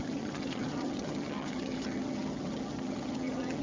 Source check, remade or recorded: remade